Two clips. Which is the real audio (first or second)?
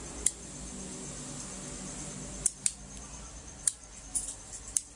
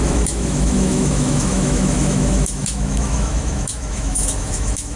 first